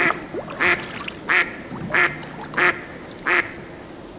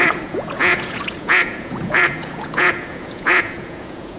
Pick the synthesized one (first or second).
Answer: second